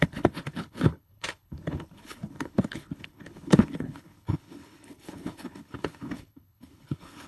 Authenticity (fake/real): fake